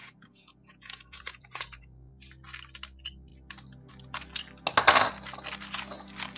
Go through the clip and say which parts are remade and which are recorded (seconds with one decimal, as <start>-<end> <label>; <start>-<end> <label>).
0.0-2.1 remade; 2.1-6.4 recorded